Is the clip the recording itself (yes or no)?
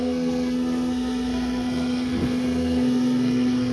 no